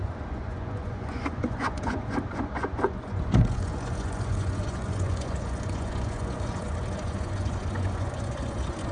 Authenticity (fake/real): fake